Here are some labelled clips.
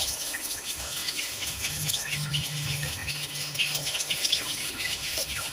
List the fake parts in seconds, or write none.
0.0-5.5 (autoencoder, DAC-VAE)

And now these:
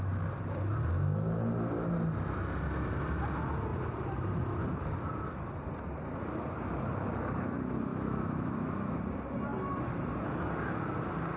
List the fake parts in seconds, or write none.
7.9-9.0 (autoencoder, DAC-VAE)

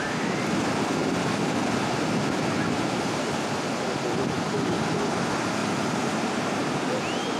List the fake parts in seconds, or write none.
5.6-6.9 (vocoder, BigVGAN v2)

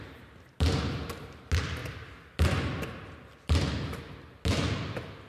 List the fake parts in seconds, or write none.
none

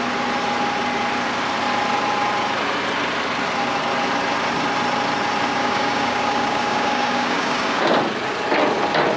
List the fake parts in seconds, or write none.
5.6-7.9 (codec, DAC)

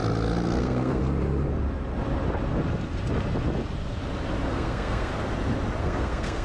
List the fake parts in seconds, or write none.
0.6-1.0 (codec, SNAC); 4.5-5.1; 5.8-6.4

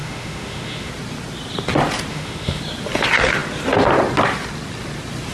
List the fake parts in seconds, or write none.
0.0-0.9 (autoencoder, DAC-VAE); 2.1-2.6

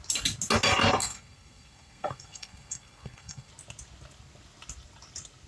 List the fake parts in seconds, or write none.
1.0-3.5 (codec, SNAC)